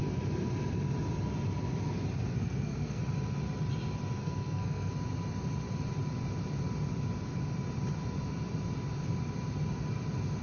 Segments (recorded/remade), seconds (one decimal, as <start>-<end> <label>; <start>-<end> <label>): 0.0-2.3 recorded; 2.3-3.0 remade; 3.0-4.2 recorded; 4.2-4.9 remade; 4.9-10.4 recorded